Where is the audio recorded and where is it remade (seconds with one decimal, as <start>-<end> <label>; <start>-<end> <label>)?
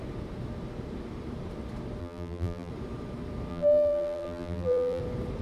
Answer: 0.0-2.0 recorded; 2.0-2.7 remade; 2.7-3.5 recorded; 3.5-5.0 remade; 5.0-5.4 recorded